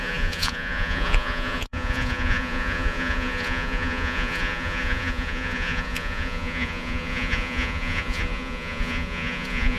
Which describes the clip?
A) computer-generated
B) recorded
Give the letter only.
A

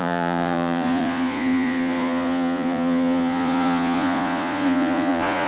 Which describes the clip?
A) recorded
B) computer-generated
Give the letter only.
B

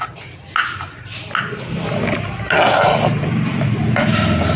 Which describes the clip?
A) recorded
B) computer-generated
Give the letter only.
A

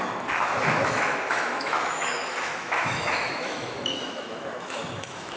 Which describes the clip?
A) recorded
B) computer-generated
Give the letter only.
B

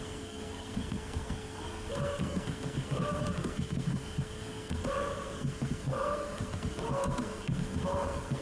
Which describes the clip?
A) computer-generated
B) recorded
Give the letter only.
A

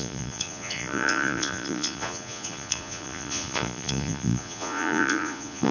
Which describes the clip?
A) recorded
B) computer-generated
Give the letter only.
B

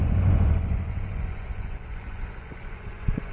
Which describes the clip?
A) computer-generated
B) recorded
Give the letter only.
A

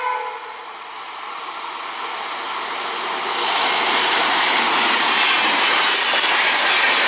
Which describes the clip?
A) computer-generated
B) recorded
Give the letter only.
B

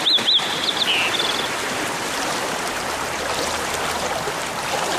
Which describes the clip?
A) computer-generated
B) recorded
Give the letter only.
B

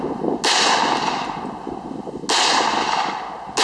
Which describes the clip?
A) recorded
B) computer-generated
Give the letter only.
A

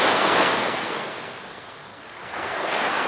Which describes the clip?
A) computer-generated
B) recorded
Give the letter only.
A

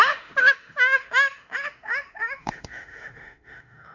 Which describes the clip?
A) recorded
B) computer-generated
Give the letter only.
B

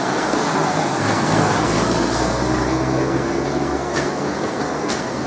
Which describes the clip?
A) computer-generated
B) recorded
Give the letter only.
A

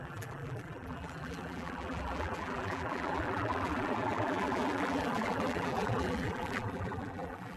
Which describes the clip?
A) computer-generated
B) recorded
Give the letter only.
A